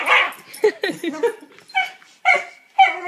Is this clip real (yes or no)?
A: yes